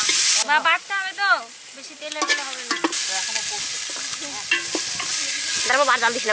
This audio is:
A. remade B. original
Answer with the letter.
B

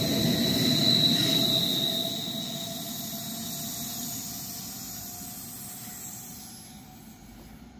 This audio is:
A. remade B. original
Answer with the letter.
B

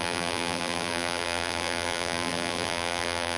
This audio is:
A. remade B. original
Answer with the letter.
A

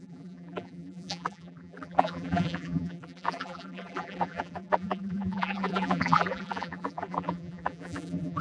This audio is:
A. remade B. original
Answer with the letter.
A